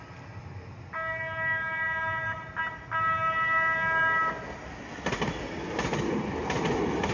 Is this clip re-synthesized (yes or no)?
no